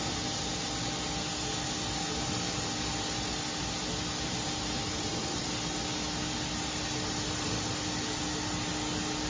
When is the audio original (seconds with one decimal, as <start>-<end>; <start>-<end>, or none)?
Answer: 0.0-4.9; 5.4-9.3